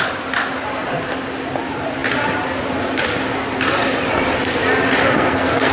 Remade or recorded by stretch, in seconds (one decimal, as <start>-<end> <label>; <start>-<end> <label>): 0.0-5.0 recorded; 5.0-5.7 remade

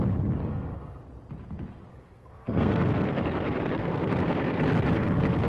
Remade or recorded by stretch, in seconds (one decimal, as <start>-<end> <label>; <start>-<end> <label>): 0.0-0.5 recorded; 0.5-1.0 remade; 1.0-1.9 recorded; 1.9-5.5 remade